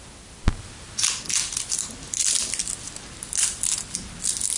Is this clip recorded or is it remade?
recorded